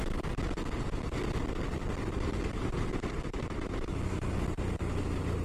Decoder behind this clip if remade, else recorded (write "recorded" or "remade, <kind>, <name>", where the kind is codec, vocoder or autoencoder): recorded